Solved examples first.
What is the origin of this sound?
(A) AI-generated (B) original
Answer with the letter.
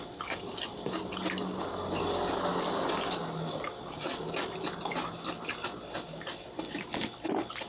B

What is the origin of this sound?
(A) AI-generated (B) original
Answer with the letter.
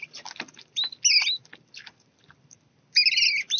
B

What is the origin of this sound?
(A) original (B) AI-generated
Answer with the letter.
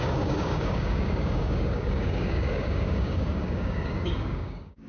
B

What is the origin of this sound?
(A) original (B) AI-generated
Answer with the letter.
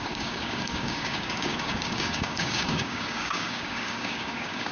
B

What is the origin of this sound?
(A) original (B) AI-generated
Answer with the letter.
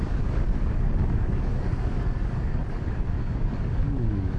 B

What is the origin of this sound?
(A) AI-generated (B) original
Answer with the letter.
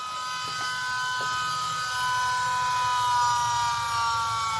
B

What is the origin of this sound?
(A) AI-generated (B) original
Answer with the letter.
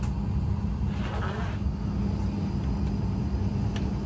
B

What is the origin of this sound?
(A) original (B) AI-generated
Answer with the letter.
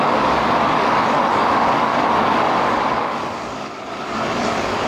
B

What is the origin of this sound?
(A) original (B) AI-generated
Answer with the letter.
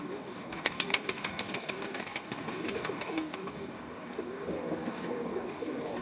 B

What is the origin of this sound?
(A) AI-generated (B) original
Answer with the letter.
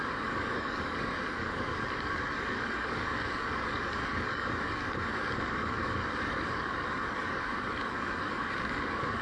A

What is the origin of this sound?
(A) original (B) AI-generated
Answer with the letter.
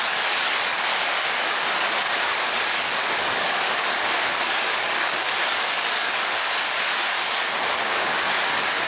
B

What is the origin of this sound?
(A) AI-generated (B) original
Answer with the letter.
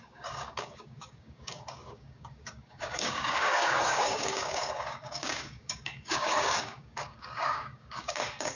A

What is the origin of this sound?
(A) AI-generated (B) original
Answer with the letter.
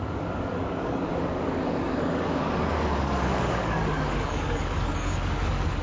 A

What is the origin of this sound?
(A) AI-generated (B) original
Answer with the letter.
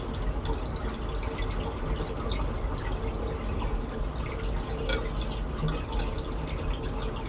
B